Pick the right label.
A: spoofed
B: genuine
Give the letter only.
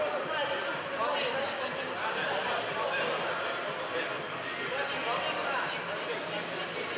B